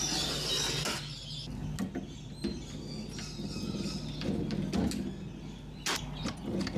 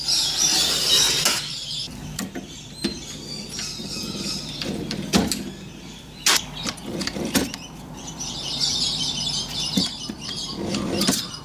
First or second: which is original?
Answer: first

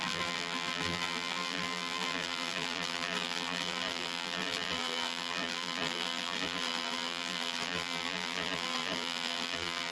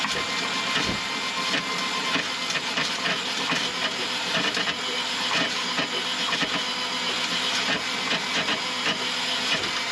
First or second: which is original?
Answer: second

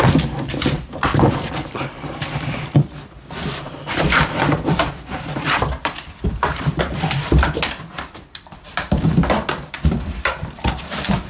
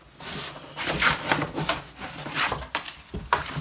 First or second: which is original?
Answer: second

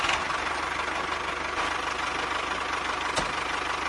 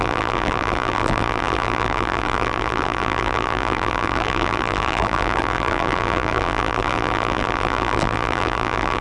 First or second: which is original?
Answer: first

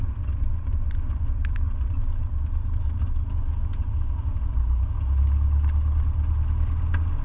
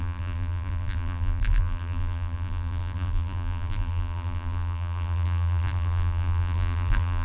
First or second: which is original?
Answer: first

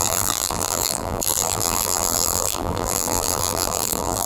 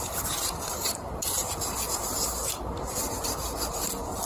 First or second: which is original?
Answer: second